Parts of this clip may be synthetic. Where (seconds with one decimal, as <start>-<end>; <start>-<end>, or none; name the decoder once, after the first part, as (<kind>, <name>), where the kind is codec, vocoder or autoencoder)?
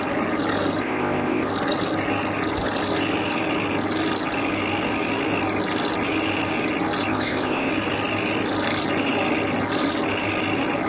0.8-1.5 (codec, ZipCodec); 7.1-7.7